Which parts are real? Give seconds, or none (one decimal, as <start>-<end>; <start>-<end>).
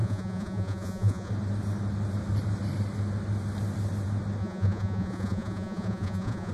1.3-4.4